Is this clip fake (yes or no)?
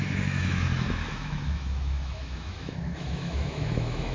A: yes